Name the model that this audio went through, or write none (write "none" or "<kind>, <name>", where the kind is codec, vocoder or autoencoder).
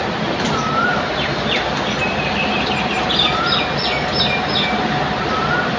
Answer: none